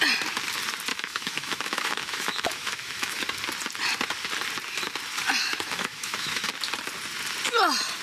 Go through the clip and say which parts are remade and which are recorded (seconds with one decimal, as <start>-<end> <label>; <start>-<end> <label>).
0.0-0.9 recorded; 0.9-3.2 remade; 3.2-5.4 recorded; 5.4-6.4 remade; 6.4-8.0 recorded